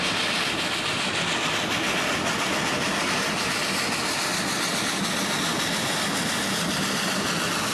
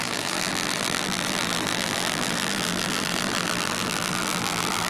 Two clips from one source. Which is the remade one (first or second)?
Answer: second